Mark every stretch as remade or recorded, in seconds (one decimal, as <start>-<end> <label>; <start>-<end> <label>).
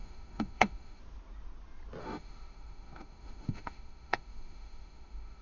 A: 0.0-1.0 remade; 1.0-2.0 recorded; 2.0-5.4 remade